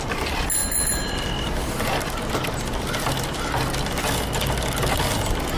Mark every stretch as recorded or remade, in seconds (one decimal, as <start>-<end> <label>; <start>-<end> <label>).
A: 0.0-5.6 recorded